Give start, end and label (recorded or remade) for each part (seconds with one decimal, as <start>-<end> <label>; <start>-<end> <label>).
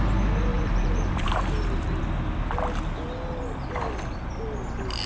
0.0-0.5 recorded; 0.5-2.0 remade; 2.0-5.1 recorded